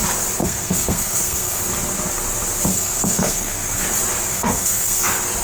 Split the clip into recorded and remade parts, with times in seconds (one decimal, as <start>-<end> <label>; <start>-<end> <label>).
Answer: 0.0-0.4 recorded; 0.4-1.6 remade; 1.6-2.7 recorded; 2.7-3.8 remade; 3.8-4.3 recorded; 4.3-5.0 remade; 5.0-5.4 recorded